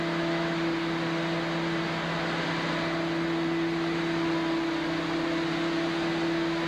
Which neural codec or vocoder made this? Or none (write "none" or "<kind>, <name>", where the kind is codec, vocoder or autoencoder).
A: none